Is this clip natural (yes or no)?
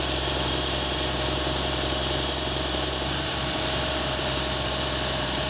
no